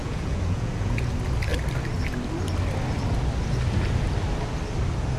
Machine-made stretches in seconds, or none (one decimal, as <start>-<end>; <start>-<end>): 0.0-1.1